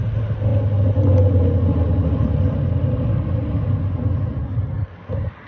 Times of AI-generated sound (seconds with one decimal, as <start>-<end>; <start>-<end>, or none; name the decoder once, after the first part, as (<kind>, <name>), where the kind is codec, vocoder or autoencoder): none